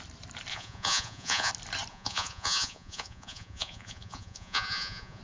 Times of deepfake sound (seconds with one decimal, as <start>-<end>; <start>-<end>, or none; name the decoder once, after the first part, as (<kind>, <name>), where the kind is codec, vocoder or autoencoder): 0.5-1.5 (vocoder, Vocos); 1.9-5.2